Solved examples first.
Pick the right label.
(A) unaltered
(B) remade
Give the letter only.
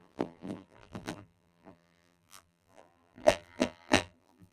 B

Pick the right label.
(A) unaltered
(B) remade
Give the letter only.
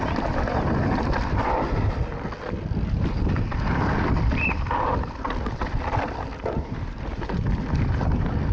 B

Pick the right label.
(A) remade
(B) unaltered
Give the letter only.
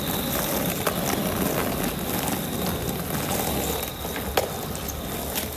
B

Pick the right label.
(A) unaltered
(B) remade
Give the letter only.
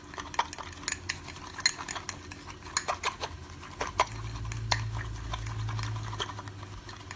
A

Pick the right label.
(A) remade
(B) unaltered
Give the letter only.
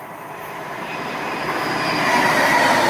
B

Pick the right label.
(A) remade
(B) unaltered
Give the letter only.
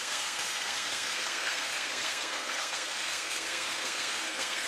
A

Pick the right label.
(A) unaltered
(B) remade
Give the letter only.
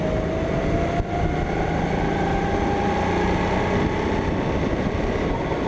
A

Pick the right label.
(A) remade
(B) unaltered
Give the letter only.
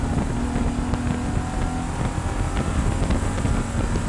B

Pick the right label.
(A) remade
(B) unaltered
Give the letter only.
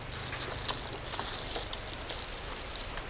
B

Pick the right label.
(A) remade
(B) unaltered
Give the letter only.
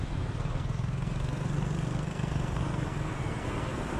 A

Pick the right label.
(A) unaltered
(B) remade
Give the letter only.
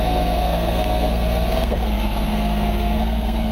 B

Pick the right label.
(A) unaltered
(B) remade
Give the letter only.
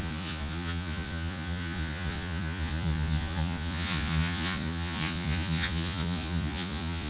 B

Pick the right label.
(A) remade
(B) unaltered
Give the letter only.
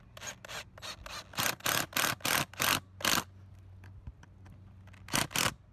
B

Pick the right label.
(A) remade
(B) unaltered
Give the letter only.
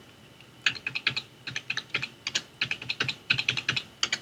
B